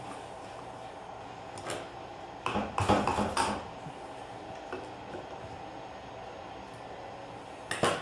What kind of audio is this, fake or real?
real